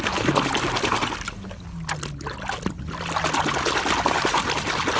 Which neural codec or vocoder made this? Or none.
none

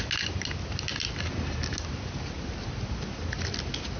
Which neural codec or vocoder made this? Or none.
none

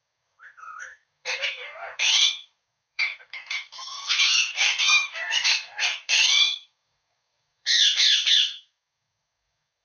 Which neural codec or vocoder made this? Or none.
codec, DAC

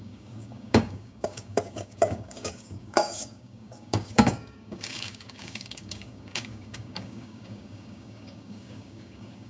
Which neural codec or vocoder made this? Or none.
codec, DAC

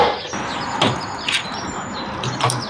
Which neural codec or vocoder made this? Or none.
none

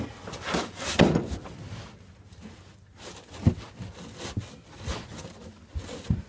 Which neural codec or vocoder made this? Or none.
none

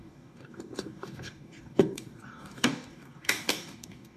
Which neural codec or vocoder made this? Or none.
codec, DAC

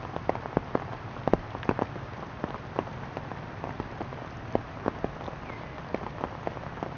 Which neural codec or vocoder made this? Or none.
none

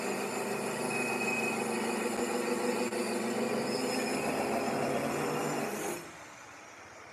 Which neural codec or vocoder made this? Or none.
none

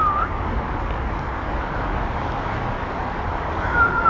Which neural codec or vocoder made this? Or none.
codec, DAC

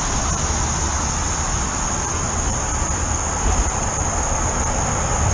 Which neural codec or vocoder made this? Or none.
none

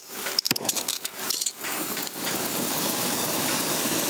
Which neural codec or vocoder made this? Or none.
codec, DAC